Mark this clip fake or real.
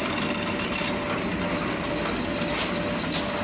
real